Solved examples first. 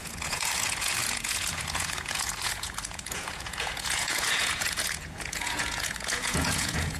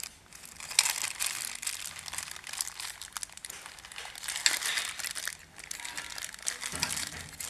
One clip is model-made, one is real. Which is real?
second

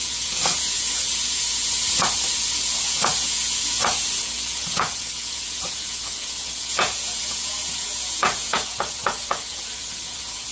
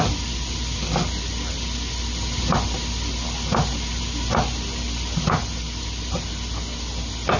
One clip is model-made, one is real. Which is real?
second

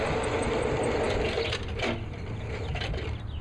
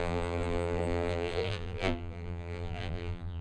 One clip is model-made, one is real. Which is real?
first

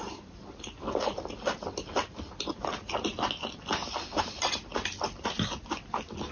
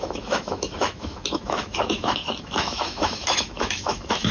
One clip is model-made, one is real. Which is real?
first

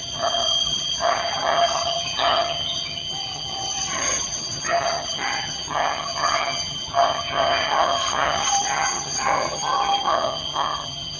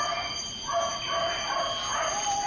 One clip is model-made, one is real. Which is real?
second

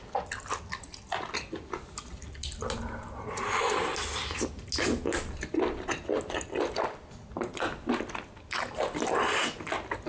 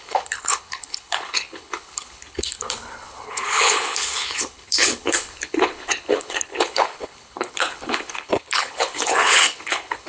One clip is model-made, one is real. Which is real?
first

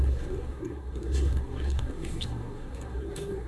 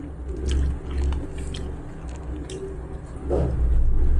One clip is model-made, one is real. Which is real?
second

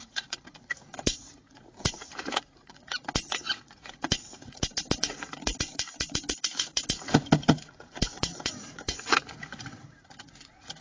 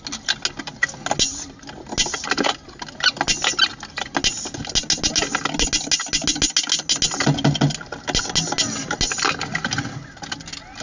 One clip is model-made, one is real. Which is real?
second